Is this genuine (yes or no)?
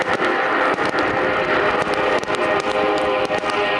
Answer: yes